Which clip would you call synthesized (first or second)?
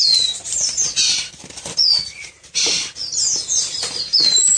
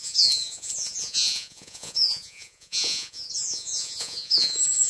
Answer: second